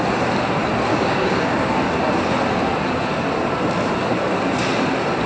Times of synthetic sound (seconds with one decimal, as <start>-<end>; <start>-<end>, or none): 0.9-1.7